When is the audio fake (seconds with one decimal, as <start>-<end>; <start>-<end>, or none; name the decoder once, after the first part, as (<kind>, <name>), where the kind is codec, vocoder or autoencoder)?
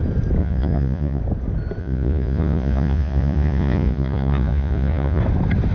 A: 0.4-1.2 (vocoder, Vocos); 1.8-5.2